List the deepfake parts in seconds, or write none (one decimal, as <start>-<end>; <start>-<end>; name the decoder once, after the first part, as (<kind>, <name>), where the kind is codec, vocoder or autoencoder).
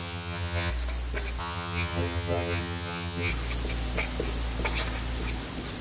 0.0-0.7 (vocoder, HiFi-GAN); 1.4-3.3